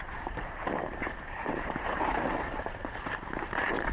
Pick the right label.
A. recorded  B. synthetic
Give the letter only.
B